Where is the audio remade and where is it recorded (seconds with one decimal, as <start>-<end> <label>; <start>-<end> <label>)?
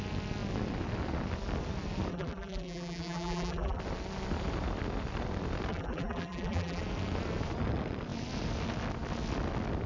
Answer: 0.0-2.1 recorded; 2.1-3.8 remade; 3.8-5.7 recorded; 5.7-6.8 remade; 6.8-9.9 recorded